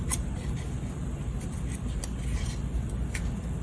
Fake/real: real